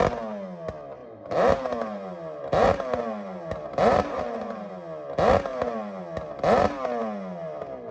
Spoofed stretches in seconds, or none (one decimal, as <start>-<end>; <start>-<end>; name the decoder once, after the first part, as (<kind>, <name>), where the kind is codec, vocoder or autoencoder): 1.0-4.7 (vocoder, BigVGAN v2); 5.5-6.0